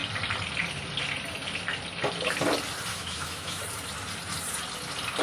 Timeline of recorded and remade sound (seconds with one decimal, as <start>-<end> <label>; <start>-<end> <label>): 0.0-2.9 recorded; 2.9-3.6 remade; 3.6-5.2 recorded